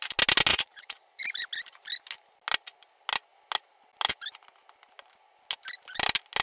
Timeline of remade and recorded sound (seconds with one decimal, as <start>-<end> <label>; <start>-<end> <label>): 0.0-0.5 recorded; 0.5-1.2 remade; 1.2-6.4 recorded